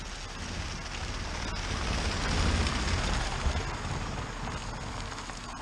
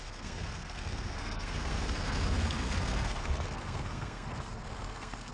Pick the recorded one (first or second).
first